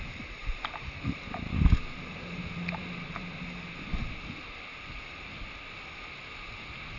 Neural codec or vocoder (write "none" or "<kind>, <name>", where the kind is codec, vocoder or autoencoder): none